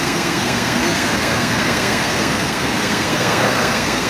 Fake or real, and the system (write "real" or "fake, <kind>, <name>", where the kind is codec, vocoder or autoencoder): fake, codec, SNAC